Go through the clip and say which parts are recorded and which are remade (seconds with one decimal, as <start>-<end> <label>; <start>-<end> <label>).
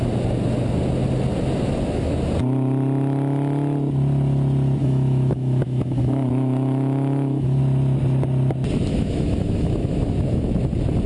0.0-4.8 recorded; 4.8-7.6 remade; 7.6-8.9 recorded; 8.9-10.6 remade; 10.6-11.1 recorded